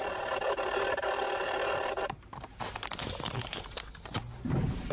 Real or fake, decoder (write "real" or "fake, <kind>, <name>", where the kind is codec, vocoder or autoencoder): fake, vocoder, BigVGAN v2